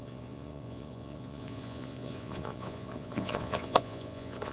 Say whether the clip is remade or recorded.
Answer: remade